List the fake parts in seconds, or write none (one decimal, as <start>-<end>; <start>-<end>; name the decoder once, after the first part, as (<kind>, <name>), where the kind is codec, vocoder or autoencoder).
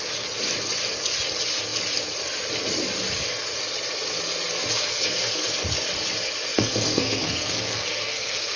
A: 4.7-5.5 (codec, SNAC); 6.5-8.6